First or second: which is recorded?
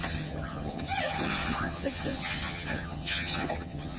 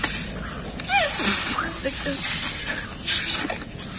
second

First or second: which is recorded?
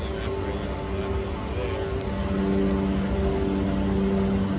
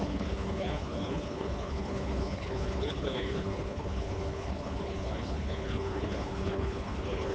first